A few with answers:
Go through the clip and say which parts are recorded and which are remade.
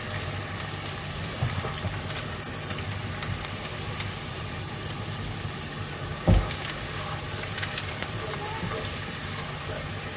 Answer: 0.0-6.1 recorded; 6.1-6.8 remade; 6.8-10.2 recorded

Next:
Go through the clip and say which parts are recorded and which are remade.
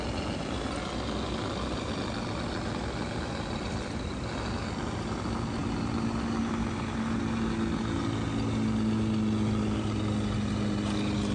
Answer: 0.0-11.3 recorded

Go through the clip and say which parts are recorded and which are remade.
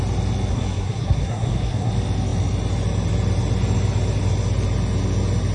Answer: 0.0-0.5 recorded; 0.5-1.9 remade; 1.9-5.5 recorded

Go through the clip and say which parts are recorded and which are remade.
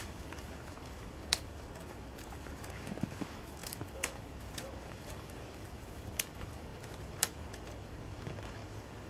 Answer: 0.0-9.1 remade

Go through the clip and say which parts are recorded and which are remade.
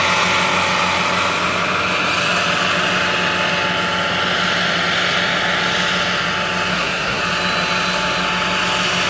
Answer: 0.0-6.7 recorded; 6.7-7.2 remade; 7.2-9.1 recorded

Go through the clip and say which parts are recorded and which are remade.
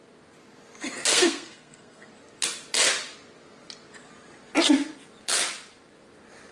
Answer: 0.0-1.1 recorded; 1.1-2.1 remade; 2.1-6.5 recorded